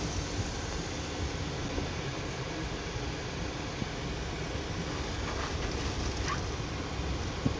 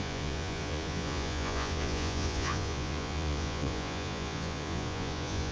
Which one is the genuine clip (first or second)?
first